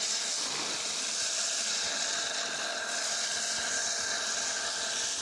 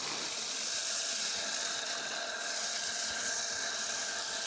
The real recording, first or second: first